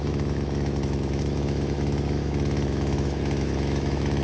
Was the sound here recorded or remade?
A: remade